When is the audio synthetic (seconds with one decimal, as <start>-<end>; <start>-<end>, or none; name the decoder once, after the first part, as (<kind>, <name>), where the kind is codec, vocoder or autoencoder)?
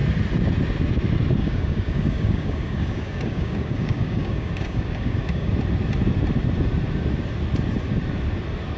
1.4-5.5 (codec, DAC)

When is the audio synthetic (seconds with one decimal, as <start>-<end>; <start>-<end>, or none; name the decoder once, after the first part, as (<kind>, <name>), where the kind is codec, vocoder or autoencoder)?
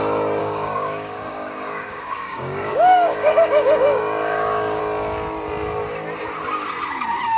0.4-4.8 (codec, DAC)